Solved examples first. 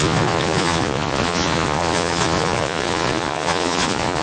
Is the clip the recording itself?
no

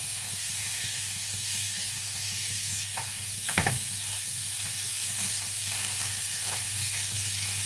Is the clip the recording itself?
no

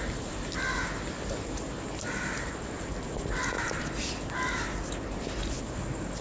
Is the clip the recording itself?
yes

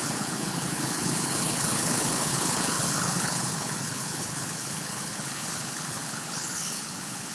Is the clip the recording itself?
no